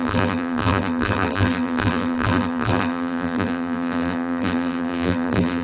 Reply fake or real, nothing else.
fake